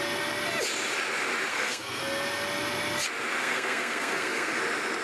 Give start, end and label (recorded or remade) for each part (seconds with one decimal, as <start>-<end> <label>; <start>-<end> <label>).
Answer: 0.0-1.5 recorded; 1.5-2.0 remade; 2.0-3.4 recorded; 3.4-4.6 remade; 4.6-5.0 recorded